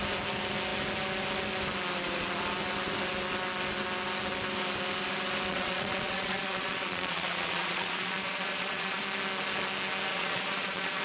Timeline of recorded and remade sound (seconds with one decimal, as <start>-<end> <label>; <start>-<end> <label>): 0.0-5.5 recorded; 5.5-9.0 remade; 9.0-10.1 recorded; 10.1-11.0 remade